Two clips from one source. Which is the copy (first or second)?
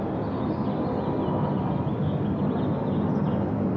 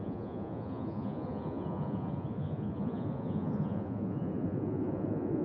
second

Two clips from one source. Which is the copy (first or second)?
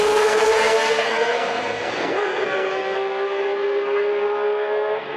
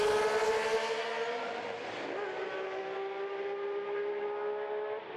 first